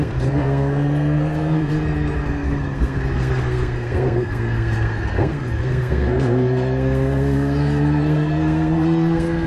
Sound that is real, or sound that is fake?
fake